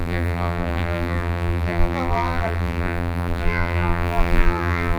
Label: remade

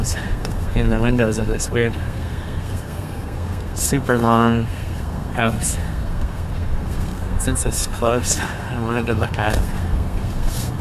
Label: remade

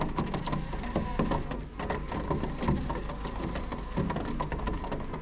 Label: recorded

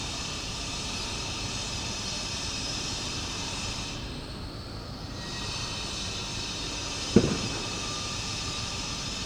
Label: remade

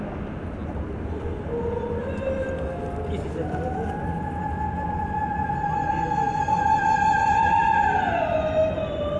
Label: recorded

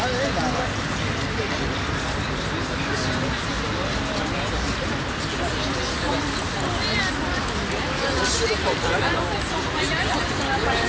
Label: recorded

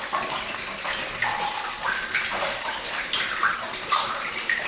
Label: recorded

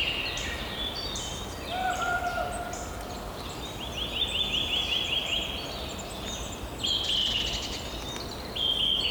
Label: recorded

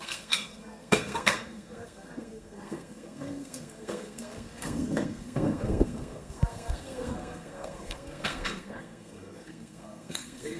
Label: remade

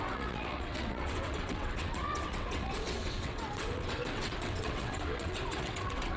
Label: remade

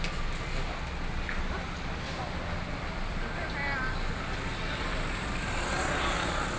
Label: recorded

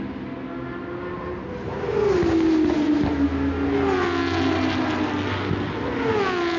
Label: recorded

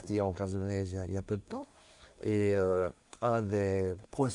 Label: remade